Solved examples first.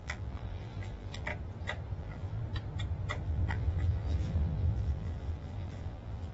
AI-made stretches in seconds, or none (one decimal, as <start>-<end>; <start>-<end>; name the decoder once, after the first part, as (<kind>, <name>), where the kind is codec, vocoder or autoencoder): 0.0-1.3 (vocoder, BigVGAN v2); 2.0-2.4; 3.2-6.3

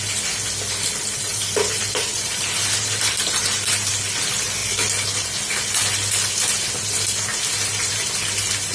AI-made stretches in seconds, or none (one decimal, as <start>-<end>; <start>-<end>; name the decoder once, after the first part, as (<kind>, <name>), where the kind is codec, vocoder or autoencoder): 1.3-3.9 (vocoder, BigVGAN v2)

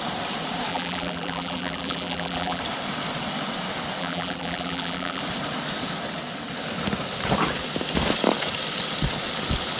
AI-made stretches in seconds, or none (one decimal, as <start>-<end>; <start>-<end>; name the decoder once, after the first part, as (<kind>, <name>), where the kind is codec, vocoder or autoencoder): 0.7-2.6 (vocoder, BigVGAN v2); 4.0-5.2

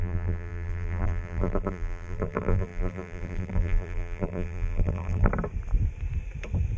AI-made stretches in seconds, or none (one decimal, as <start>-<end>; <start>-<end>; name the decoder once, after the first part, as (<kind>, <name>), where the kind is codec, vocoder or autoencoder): 0.0-5.3 (vocoder, BigVGAN v2)